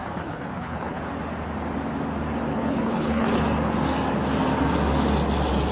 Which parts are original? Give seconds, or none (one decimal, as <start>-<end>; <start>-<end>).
1.0-2.5; 3.4-5.7